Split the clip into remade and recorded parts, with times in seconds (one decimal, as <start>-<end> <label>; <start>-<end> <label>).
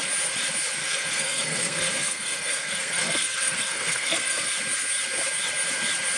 0.0-0.8 recorded; 0.8-4.5 remade; 4.5-6.2 recorded